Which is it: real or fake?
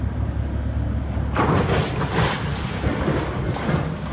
real